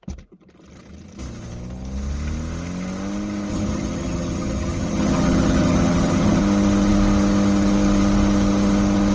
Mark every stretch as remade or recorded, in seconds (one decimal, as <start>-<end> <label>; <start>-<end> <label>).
0.0-3.5 recorded; 3.5-6.4 remade; 6.4-9.1 recorded